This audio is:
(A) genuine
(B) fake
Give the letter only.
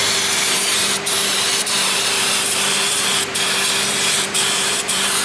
B